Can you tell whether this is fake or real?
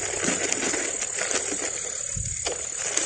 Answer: real